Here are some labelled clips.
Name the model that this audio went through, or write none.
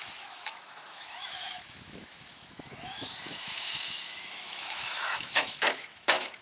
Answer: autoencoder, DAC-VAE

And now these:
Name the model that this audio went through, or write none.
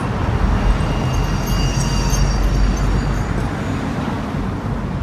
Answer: none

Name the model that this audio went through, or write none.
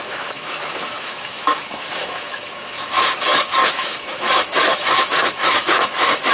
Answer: autoencoder, DAC-VAE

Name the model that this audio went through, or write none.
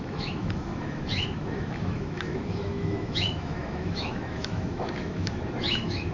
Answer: autoencoder, DAC-VAE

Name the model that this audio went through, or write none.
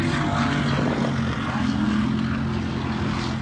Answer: none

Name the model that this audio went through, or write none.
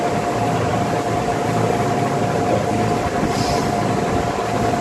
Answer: none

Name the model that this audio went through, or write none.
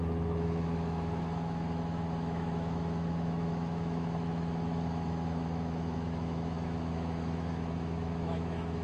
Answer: autoencoder, DAC-VAE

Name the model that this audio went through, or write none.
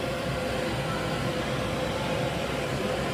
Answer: none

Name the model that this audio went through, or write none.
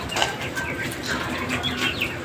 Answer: none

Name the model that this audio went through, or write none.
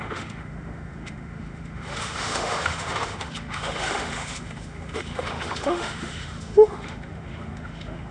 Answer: autoencoder, DAC-VAE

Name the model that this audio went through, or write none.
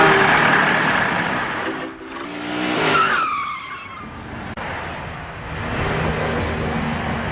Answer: none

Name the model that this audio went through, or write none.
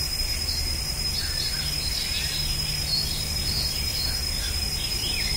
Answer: none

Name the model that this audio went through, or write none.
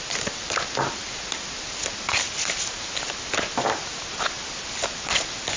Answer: none